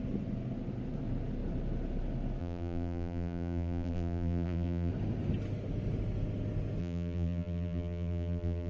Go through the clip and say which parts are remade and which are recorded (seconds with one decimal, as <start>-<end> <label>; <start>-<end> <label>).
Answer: 0.0-2.4 recorded; 2.4-4.9 remade; 4.9-6.8 recorded; 6.8-8.7 remade